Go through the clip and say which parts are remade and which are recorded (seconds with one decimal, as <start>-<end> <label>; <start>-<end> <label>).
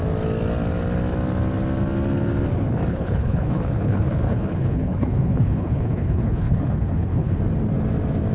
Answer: 0.0-2.9 recorded; 2.9-7.4 remade; 7.4-8.3 recorded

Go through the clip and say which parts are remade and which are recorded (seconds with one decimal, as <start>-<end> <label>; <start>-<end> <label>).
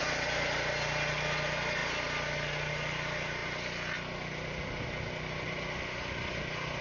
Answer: 0.0-6.8 recorded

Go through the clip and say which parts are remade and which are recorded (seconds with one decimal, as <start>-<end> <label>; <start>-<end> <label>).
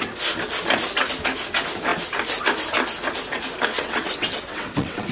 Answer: 0.0-3.7 recorded; 3.7-5.1 remade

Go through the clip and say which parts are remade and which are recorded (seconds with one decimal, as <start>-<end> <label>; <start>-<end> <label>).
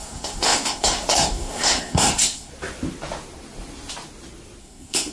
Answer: 0.0-2.5 remade; 2.5-4.6 recorded; 4.6-5.1 remade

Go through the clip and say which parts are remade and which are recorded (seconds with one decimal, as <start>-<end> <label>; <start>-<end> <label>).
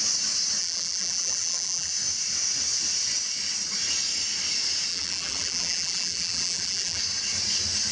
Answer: 0.0-0.6 recorded; 0.6-1.9 remade; 1.9-4.9 recorded; 4.9-7.0 remade; 7.0-7.9 recorded